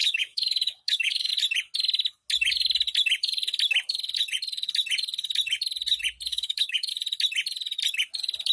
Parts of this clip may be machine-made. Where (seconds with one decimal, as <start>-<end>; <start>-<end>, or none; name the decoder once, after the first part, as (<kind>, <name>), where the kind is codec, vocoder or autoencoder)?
0.0-1.3 (codec, DAC); 6.3-6.9